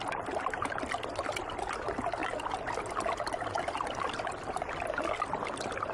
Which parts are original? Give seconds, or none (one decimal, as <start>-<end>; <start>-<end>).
0.0-5.9